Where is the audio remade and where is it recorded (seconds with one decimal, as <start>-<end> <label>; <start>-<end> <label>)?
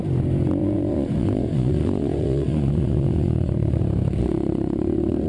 0.0-0.6 recorded; 0.6-3.8 remade; 3.8-4.2 recorded; 4.2-5.3 remade